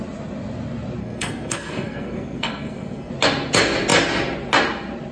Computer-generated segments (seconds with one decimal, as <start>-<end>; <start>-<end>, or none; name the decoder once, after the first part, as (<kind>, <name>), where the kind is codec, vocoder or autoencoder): 1.0-3.1 (codec, SNAC)